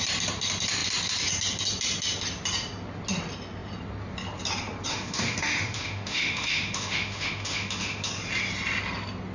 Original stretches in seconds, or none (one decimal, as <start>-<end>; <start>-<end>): 0.0-4.9; 8.1-9.3